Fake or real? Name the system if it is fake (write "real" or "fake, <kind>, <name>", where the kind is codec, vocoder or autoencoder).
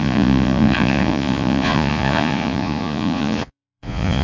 fake, vocoder, Vocos